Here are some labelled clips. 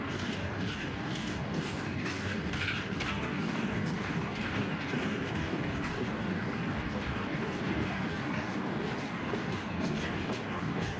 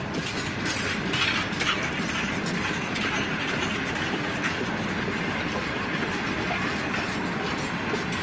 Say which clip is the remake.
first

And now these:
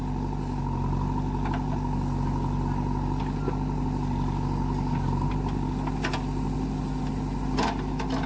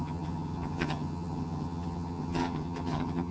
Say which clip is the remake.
second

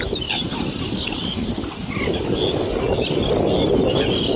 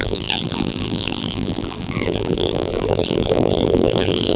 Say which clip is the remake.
second